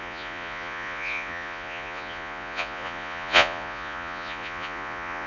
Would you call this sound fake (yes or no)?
yes